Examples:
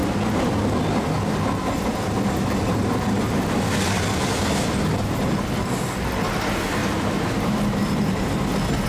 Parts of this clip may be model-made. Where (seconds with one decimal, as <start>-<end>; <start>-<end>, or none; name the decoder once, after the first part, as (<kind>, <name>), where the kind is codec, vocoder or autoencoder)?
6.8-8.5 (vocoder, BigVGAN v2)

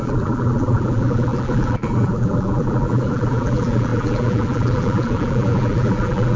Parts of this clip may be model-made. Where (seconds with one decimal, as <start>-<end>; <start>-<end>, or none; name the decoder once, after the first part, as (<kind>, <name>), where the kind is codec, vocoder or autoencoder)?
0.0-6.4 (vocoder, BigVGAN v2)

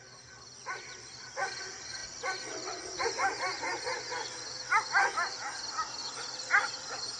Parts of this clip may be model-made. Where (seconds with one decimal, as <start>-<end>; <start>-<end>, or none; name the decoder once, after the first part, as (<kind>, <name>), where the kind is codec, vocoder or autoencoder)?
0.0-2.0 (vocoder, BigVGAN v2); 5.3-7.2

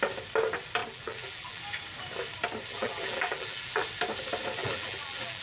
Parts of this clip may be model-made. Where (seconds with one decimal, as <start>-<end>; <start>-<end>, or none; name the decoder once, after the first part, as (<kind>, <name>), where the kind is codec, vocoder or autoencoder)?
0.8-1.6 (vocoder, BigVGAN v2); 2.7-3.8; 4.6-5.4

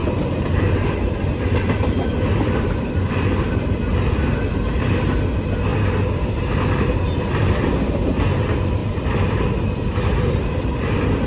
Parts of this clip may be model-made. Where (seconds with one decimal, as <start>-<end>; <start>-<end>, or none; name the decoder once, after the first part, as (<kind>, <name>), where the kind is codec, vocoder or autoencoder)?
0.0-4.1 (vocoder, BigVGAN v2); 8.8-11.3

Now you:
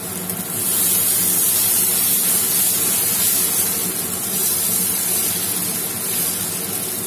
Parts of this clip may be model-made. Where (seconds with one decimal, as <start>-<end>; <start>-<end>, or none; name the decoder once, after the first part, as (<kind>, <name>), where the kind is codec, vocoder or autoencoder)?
3.8-5.1 (vocoder, BigVGAN v2)

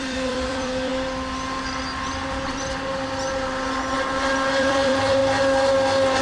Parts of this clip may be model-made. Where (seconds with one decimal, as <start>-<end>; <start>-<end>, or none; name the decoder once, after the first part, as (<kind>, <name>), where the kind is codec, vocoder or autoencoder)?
0.0-0.9 (vocoder, BigVGAN v2); 4.6-5.2